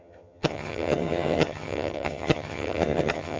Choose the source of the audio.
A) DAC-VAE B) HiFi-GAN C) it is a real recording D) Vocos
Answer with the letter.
B